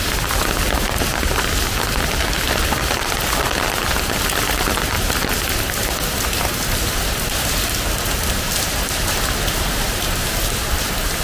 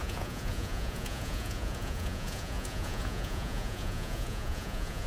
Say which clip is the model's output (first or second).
second